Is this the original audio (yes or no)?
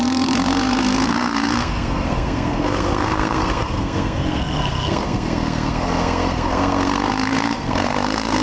no